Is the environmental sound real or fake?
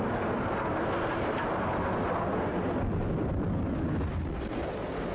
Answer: real